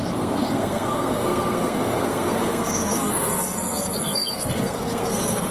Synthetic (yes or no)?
yes